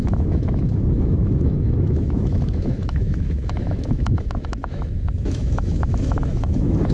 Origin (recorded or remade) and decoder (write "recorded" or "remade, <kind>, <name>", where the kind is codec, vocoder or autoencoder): remade, autoencoder, DAC-VAE